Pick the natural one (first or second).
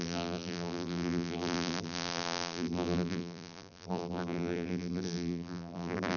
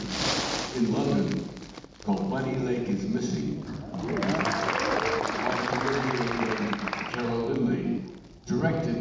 second